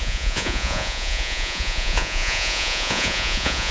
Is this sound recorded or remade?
remade